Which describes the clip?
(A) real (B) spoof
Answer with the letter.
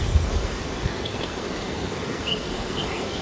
B